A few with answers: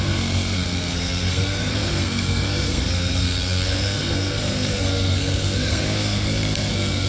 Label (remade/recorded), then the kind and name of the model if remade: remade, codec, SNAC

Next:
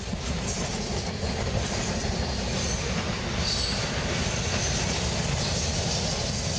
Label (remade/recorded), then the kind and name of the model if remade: recorded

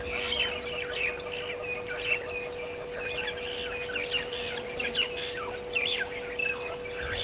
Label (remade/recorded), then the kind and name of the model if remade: recorded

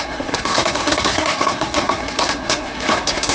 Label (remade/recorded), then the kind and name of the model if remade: remade, codec, SNAC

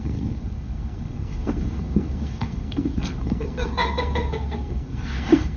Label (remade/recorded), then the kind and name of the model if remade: remade, codec, SNAC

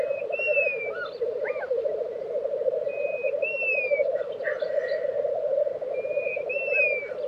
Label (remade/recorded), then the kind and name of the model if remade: recorded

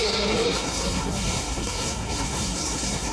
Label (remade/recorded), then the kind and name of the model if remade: remade, codec, SNAC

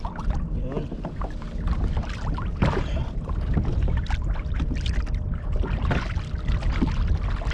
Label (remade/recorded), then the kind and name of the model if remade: recorded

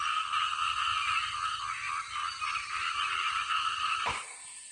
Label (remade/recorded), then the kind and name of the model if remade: recorded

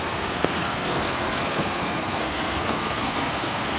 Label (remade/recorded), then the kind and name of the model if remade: remade, codec, SNAC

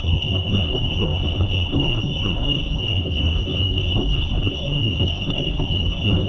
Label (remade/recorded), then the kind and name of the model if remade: remade, codec, SNAC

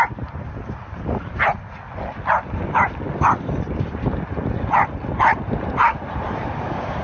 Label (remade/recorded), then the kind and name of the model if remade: recorded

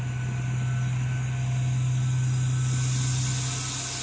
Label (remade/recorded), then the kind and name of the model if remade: recorded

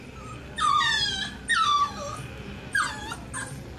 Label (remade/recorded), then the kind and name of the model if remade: recorded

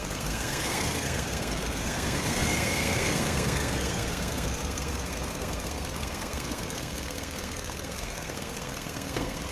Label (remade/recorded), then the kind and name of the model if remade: remade, codec, SNAC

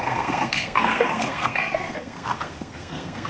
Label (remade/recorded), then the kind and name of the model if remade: remade, codec, SNAC